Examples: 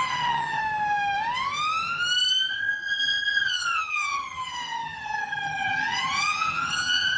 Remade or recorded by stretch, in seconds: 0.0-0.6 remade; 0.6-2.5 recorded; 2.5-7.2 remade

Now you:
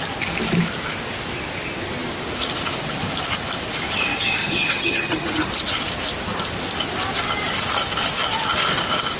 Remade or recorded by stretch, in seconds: 0.0-4.4 recorded; 4.4-5.5 remade; 5.5-9.2 recorded

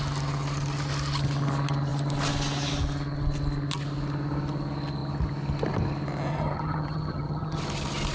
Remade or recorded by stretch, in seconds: 0.0-6.3 recorded; 6.3-7.6 remade; 7.6-8.1 recorded

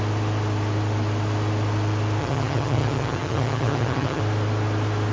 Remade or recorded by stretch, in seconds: 0.0-2.2 recorded; 2.2-4.2 remade; 4.2-5.1 recorded

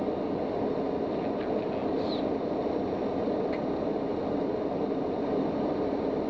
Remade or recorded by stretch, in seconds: 0.0-6.3 recorded

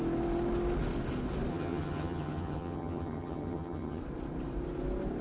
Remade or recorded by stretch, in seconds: 0.0-1.5 recorded; 1.5-4.0 remade; 4.0-5.2 recorded

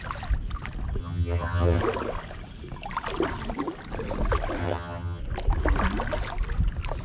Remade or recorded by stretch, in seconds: 0.0-1.0 recorded; 1.0-1.8 remade; 1.8-4.6 recorded; 4.6-5.2 remade; 5.2-7.0 recorded